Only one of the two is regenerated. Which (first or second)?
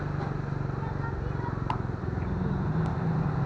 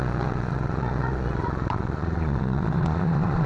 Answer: second